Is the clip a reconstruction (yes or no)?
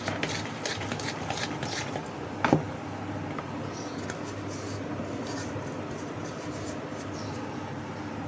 no